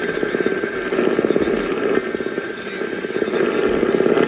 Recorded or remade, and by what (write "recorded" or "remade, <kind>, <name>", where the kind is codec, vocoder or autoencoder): recorded